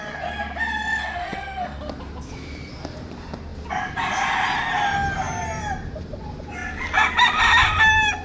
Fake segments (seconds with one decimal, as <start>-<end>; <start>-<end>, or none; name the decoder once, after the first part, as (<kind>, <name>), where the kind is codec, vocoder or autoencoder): 1.0-1.8 (codec, SNAC)